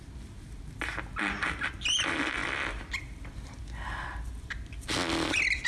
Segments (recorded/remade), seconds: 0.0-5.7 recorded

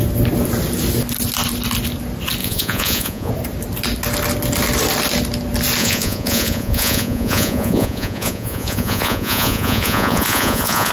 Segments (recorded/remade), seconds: 0.0-2.4 recorded; 2.4-3.3 remade; 3.3-5.8 recorded; 5.8-10.9 remade